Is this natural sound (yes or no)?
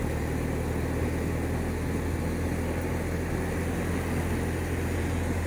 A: yes